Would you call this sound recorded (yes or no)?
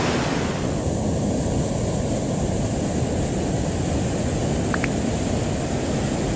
yes